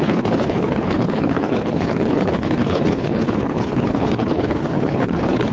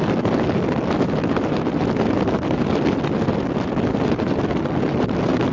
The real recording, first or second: second